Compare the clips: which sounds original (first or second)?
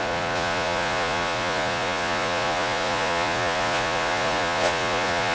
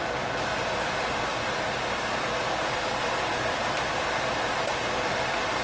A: second